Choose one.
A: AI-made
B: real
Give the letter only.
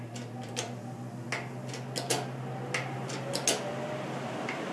B